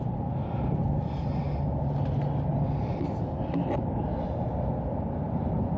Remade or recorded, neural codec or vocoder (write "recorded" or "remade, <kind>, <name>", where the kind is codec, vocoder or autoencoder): recorded